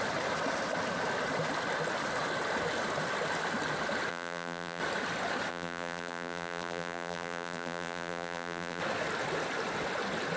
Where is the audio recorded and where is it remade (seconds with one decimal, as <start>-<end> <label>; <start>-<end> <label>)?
0.0-4.1 recorded; 4.1-4.8 remade; 4.8-5.5 recorded; 5.5-8.8 remade; 8.8-10.4 recorded